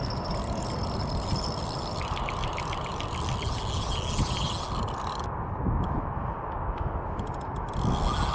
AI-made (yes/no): no